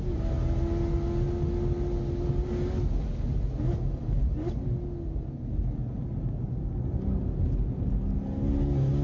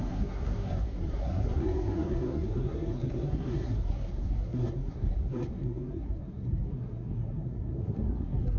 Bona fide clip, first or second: first